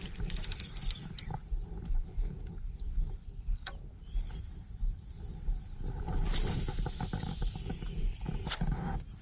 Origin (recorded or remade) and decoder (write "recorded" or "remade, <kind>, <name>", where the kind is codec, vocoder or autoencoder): recorded